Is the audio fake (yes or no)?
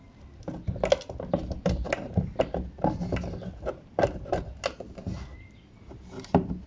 no